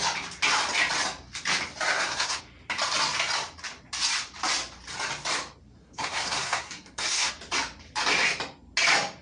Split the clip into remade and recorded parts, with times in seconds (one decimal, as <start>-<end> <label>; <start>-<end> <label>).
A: 0.0-1.9 recorded; 1.9-2.4 remade; 2.4-5.8 recorded; 5.8-7.3 remade; 7.3-9.2 recorded